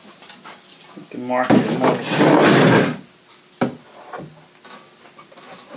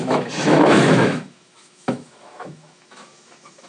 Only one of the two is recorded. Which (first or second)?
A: first